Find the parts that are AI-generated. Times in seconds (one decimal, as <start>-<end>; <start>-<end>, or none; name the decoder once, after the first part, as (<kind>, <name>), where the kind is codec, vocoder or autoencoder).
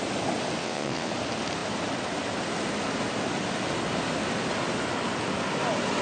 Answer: 0.6-1.1 (vocoder, WaveNeXt)